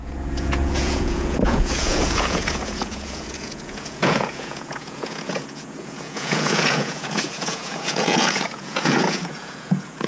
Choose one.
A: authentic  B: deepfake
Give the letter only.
B